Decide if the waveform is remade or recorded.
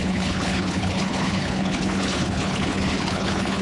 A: remade